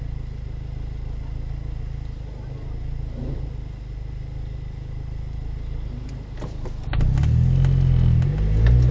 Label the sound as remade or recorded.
recorded